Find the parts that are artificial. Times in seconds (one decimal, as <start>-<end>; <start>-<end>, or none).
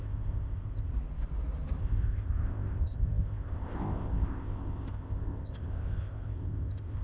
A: 0.0-0.9; 1.8-7.0